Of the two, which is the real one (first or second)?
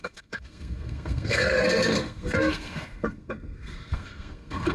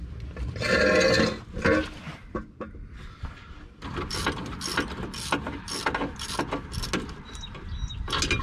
second